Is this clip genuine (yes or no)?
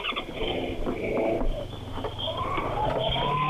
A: yes